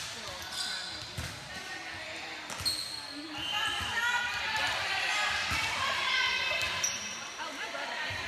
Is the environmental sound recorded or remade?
recorded